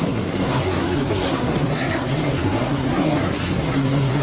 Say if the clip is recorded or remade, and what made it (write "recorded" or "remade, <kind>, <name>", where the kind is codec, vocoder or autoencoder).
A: remade, codec, SNAC